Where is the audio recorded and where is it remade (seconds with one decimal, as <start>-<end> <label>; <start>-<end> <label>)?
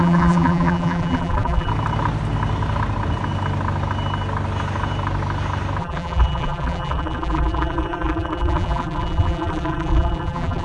0.0-1.7 remade; 1.7-5.8 recorded; 5.8-10.6 remade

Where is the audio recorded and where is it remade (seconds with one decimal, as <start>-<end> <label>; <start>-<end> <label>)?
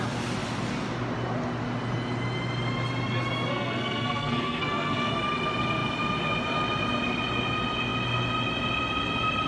0.0-3.5 recorded; 3.5-5.1 remade; 5.1-9.5 recorded